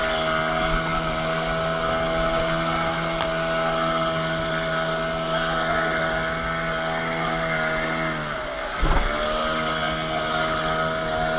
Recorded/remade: recorded